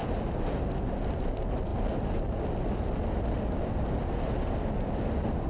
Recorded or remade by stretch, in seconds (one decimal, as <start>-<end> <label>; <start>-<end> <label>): 0.0-5.5 recorded